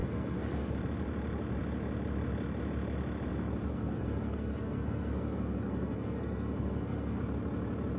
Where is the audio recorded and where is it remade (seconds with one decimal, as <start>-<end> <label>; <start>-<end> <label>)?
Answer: 0.0-0.7 remade; 0.7-3.7 recorded; 3.7-7.2 remade; 7.2-8.0 recorded